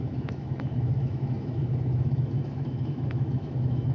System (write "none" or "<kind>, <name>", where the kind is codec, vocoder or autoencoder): autoencoder, DAC-VAE